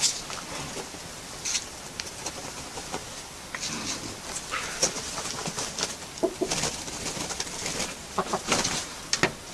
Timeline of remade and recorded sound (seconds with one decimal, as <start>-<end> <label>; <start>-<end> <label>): 0.0-2.4 recorded; 2.4-3.1 remade; 3.1-8.0 recorded; 8.0-9.0 remade; 9.0-9.5 recorded